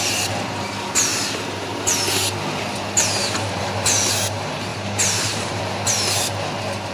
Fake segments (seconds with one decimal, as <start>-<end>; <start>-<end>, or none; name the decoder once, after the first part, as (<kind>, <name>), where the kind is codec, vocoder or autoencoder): 4.7-5.6 (vocoder, BigVGAN v2)